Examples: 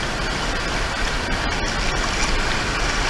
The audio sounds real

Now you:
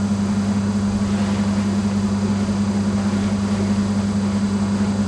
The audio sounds real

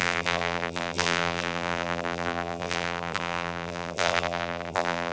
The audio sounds fake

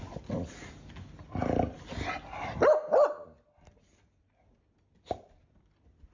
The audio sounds real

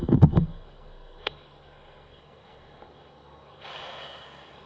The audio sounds fake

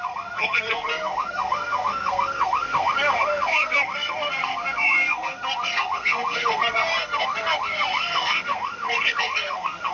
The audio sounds fake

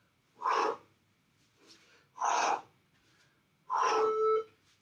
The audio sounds real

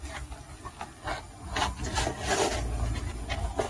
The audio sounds real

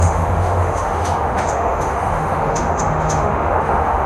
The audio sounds fake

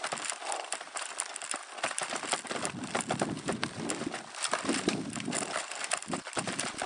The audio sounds fake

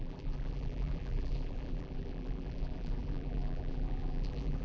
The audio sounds fake